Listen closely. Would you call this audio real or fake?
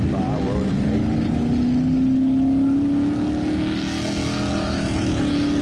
real